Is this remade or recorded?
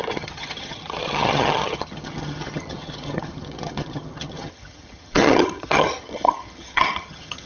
remade